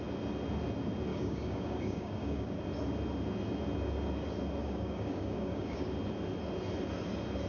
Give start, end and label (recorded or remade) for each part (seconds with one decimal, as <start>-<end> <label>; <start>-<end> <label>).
0.0-1.1 recorded; 1.1-2.6 remade; 2.6-4.6 recorded; 4.6-5.9 remade; 5.9-7.5 recorded